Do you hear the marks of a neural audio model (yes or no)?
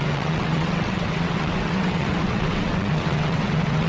yes